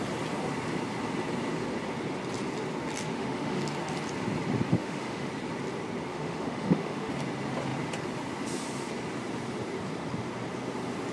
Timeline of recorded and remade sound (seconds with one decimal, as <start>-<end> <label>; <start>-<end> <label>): 0.0-3.1 recorded; 3.1-3.6 remade; 3.6-4.7 recorded; 4.7-5.3 remade; 5.3-6.1 recorded; 6.1-7.1 remade; 7.1-11.1 recorded